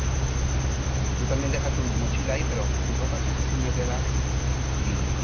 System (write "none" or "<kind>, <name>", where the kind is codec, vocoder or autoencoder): none